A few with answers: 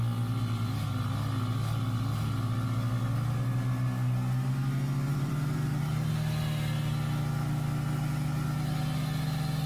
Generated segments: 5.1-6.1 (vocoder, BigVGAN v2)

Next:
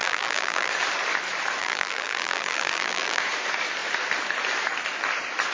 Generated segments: 0.0-0.7 (vocoder, BigVGAN v2); 1.6-3.2

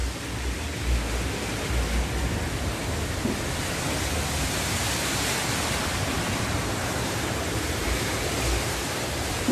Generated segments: 4.4-9.5 (vocoder, BigVGAN v2)